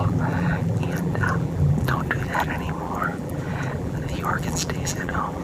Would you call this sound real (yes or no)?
no